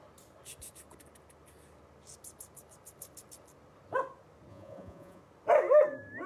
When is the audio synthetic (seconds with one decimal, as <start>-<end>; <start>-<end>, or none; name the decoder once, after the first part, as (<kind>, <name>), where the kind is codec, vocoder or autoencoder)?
4.5-5.2 (vocoder, Vocos)